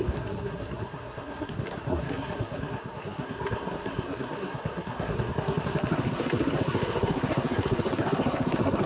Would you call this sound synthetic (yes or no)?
yes